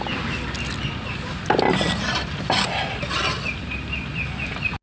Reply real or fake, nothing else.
real